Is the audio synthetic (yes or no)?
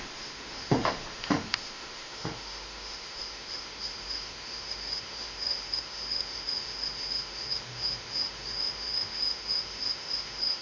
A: yes